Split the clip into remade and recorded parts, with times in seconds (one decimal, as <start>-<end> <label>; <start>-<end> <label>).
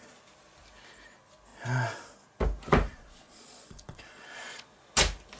0.0-2.9 recorded; 2.9-4.8 remade; 4.8-5.4 recorded